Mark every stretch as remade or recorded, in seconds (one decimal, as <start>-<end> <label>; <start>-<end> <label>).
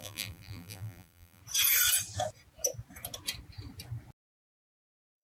0.0-1.4 remade; 1.4-4.5 recorded; 4.5-5.2 remade